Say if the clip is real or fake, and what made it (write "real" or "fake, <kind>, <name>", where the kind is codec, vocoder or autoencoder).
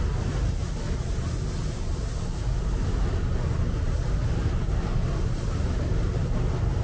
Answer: real